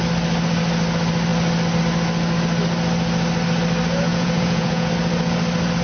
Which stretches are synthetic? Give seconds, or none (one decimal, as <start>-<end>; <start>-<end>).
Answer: 4.1-4.9

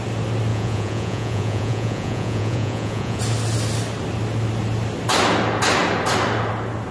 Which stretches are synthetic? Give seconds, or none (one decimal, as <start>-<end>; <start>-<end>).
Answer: 0.5-3.2

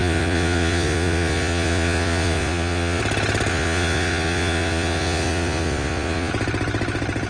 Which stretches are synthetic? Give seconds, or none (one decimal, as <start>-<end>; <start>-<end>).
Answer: 0.0-3.0; 3.5-6.3